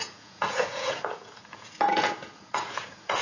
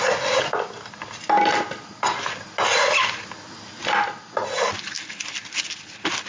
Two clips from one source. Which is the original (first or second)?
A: second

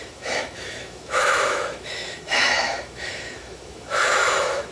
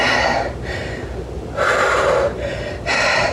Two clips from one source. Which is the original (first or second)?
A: second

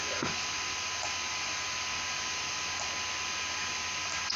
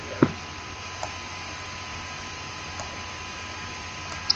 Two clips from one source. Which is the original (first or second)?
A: first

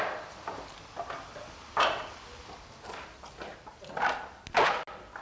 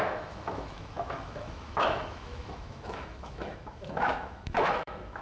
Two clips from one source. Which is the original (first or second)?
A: first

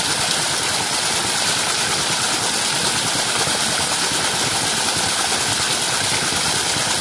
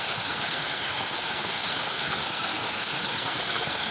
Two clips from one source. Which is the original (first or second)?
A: first